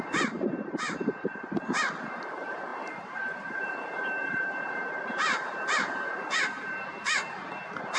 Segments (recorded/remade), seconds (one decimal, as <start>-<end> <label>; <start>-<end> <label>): 0.0-8.0 remade